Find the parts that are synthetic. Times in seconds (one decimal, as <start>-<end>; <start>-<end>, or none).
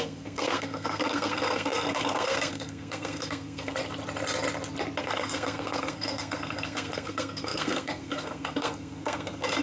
0.0-3.8; 5.0-9.6